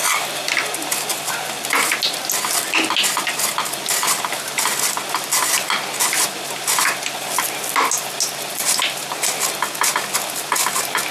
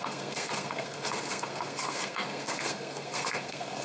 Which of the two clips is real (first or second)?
first